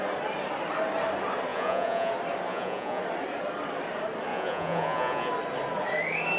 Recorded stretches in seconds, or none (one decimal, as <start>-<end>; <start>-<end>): 0.0-1.5; 2.1-2.5; 3.0-4.3; 5.3-6.4

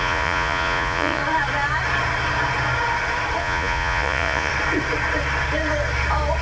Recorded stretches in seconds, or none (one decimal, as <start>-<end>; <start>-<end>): 1.2-3.4; 4.5-6.4

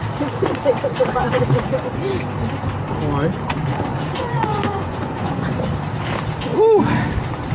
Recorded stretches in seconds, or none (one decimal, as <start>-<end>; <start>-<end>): 0.0-1.2; 2.1-3.9; 5.7-7.5